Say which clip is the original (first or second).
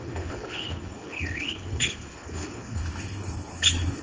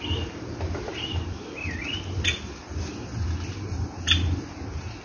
second